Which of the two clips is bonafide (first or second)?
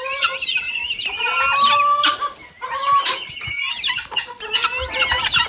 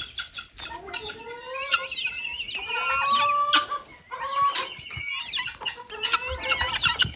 second